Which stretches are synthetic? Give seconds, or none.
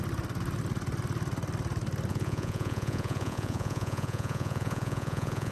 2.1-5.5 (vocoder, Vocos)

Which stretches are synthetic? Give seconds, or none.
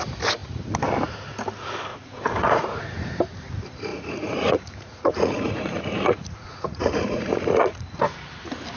1.9-3.2 (vocoder, Vocos); 3.9-8.2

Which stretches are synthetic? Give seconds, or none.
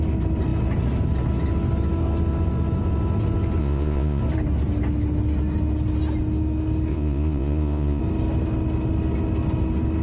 3.6-4.2 (vocoder, Vocos); 6.9-8.0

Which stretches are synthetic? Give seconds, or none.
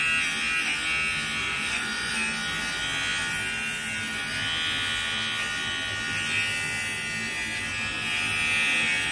1.4-2.1 (vocoder, Vocos)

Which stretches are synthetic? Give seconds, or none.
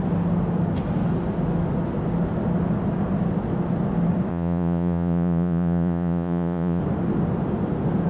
4.3-6.8 (vocoder, Vocos)